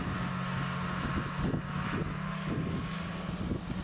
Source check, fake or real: real